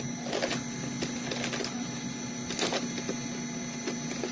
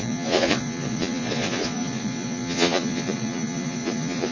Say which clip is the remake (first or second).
second